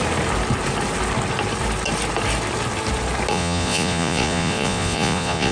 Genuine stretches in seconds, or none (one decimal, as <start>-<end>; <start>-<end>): 0.0-3.3